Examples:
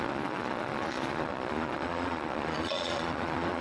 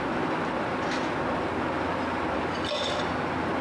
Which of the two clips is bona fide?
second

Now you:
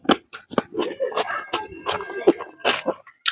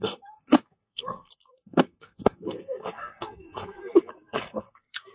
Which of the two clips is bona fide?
first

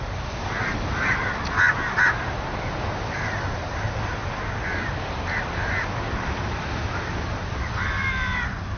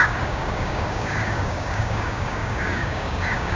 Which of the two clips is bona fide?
first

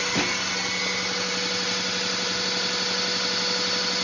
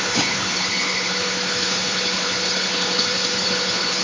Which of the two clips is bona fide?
first